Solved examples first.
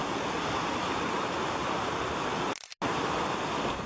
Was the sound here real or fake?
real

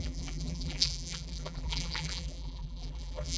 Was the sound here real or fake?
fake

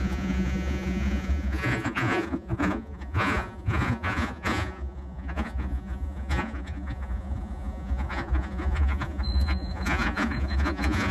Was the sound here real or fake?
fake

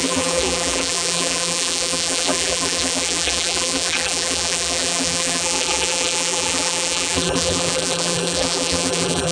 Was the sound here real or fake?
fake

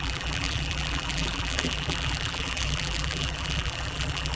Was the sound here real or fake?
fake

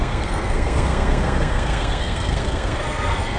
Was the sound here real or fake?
fake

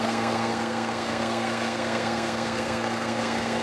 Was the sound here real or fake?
fake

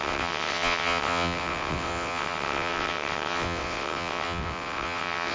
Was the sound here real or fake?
fake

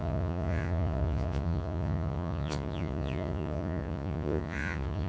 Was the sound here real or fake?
fake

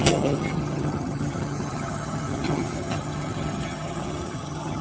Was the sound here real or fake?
fake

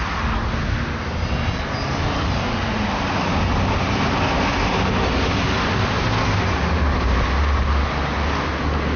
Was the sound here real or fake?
real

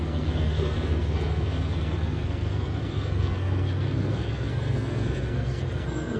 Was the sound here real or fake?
fake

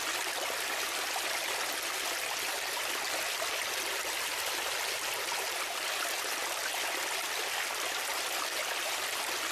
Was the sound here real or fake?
real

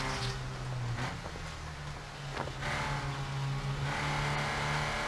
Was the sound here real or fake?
real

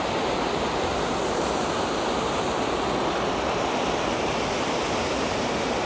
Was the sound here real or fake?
real